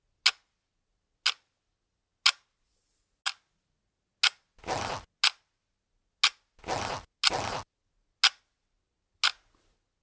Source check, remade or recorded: recorded